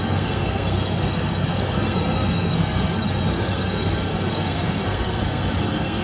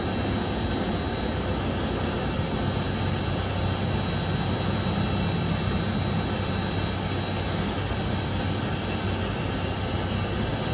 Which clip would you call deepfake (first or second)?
first